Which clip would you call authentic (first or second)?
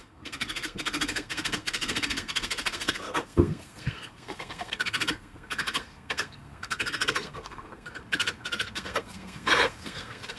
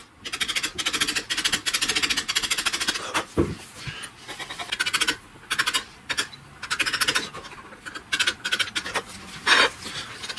second